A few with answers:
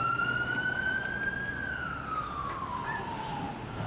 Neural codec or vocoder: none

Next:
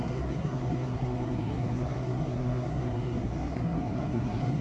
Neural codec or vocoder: codec, SNAC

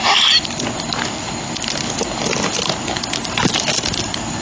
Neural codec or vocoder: none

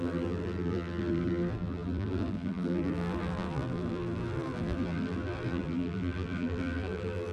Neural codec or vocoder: vocoder, BigVGAN v2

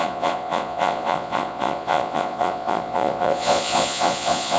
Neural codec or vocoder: vocoder, Vocos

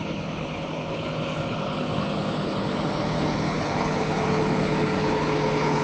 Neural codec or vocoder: codec, HILCodec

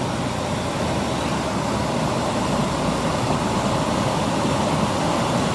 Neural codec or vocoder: none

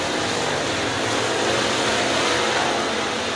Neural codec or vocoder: none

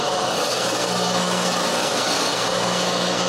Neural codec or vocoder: codec, SNAC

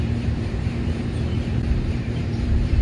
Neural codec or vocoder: vocoder, BigVGAN v2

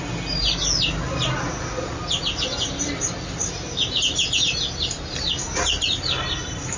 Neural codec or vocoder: none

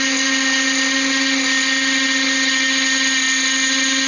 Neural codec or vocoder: none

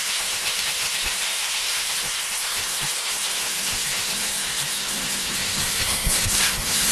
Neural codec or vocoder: codec, SNAC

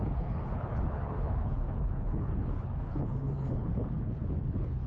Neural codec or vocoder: codec, HILCodec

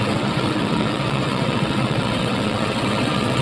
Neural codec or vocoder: vocoder, WaveNeXt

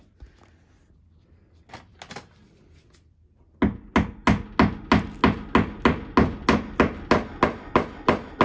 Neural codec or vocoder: none